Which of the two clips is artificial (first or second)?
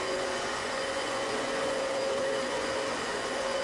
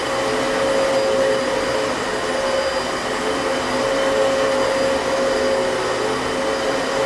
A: first